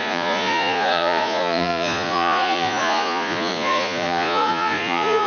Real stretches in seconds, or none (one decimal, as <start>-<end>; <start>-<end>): none

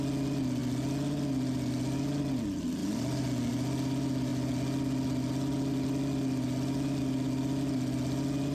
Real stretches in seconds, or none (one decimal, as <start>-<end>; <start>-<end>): 0.0-8.5

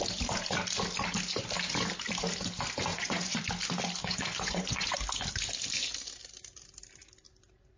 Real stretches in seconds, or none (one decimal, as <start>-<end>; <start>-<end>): 0.0-2.9; 3.4-4.0; 4.9-7.8

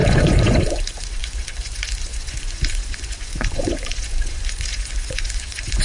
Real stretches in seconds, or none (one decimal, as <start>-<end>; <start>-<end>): none

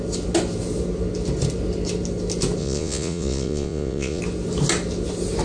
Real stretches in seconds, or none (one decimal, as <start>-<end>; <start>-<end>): 0.0-2.6; 4.2-5.4

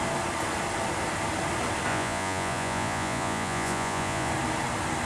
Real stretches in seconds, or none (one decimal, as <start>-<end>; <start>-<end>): 0.0-1.9; 4.3-5.1